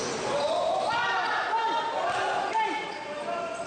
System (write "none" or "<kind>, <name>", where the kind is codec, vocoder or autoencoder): none